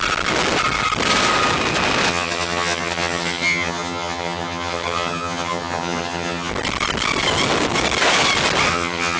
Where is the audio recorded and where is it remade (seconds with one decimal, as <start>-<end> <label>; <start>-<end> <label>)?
0.0-2.1 recorded; 2.1-6.5 remade; 6.5-8.7 recorded; 8.7-9.2 remade